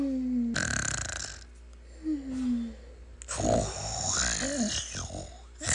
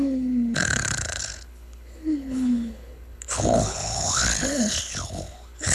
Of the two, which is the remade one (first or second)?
second